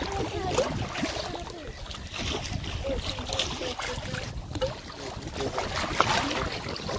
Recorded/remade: recorded